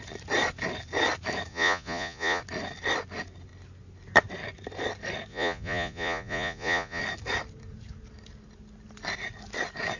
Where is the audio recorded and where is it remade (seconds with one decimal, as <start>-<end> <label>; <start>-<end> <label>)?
0.0-1.5 recorded; 1.5-2.4 remade; 2.4-5.3 recorded; 5.3-7.0 remade; 7.0-10.0 recorded

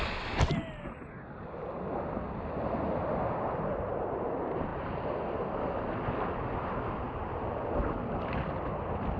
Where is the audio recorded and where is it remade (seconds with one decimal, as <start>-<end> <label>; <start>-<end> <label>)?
0.0-9.2 recorded